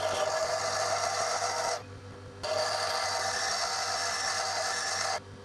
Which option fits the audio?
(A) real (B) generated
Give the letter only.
A